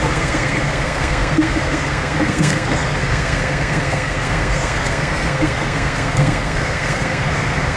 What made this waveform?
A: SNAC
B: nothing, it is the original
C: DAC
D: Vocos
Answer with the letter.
A